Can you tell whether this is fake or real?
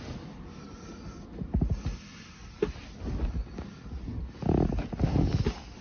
real